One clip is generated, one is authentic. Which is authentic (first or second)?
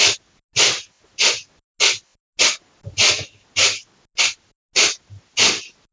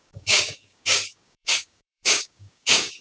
first